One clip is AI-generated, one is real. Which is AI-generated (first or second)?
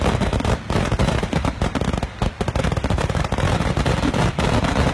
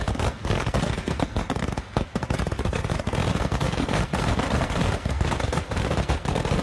second